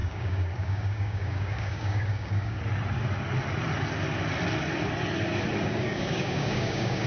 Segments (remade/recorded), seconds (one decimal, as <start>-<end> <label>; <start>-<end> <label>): 0.0-2.6 remade; 2.6-5.8 recorded; 5.8-7.1 remade